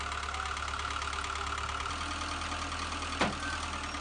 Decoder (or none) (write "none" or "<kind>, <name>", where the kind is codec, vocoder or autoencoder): none